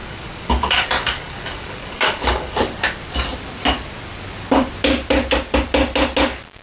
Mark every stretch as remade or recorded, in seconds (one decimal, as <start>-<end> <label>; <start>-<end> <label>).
0.0-2.8 remade; 2.8-6.6 recorded